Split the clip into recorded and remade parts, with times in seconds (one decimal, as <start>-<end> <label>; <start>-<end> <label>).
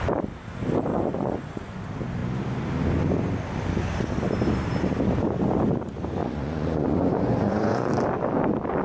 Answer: 0.0-0.9 recorded; 0.9-1.8 remade; 1.8-6.2 recorded; 6.2-7.9 remade; 7.9-8.8 recorded